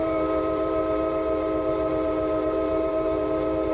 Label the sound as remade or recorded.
remade